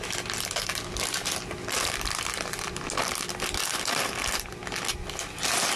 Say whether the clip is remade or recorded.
recorded